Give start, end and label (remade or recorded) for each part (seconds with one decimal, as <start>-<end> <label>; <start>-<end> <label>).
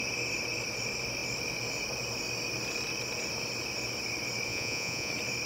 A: 0.0-4.5 recorded; 4.5-5.1 remade; 5.1-5.5 recorded